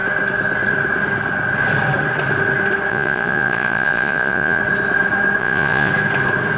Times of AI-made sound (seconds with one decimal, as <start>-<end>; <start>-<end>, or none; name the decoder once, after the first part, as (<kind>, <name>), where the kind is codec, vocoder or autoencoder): 2.9-4.6 (vocoder, Vocos); 5.4-5.9